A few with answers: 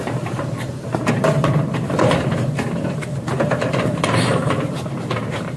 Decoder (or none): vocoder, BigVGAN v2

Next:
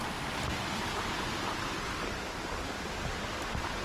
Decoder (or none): none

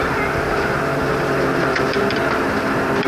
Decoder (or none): vocoder, BigVGAN v2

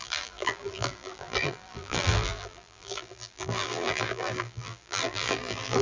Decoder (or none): vocoder, BigVGAN v2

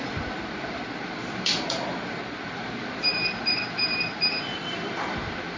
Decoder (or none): vocoder, BigVGAN v2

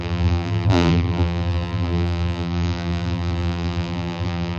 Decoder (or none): vocoder, BigVGAN v2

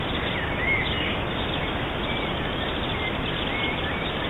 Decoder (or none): none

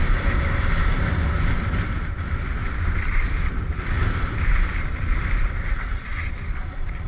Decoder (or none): vocoder, BigVGAN v2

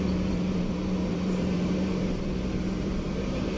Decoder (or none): vocoder, BigVGAN v2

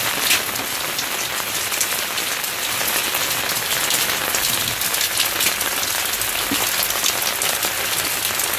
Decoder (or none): none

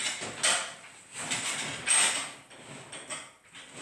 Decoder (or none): none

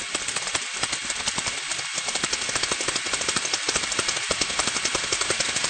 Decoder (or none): none